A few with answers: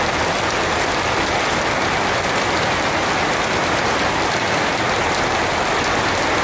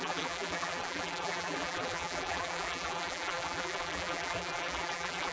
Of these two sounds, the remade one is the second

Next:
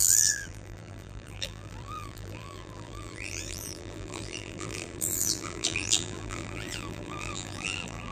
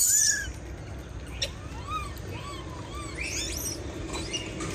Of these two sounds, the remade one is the first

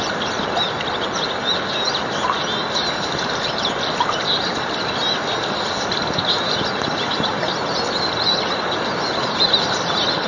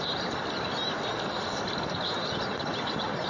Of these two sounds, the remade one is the second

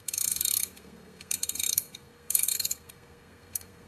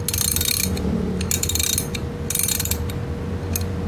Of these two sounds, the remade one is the first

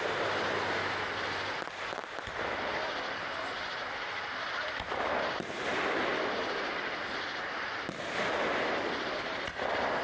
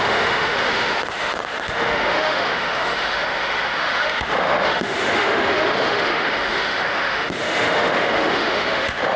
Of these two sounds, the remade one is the second